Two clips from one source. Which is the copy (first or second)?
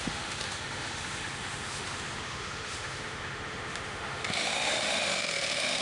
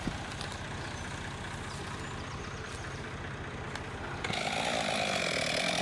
first